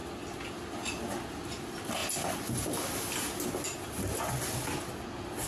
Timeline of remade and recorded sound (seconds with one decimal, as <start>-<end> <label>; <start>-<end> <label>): 0.0-5.5 recorded